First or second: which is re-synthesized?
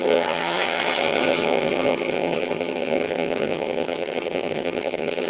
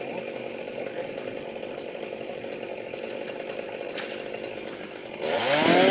first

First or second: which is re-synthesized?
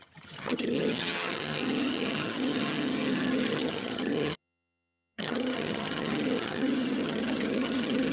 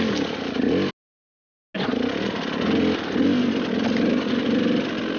first